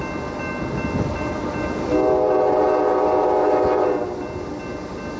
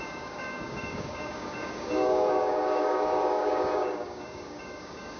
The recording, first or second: first